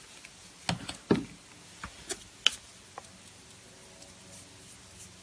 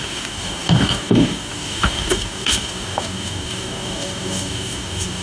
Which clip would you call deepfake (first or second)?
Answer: second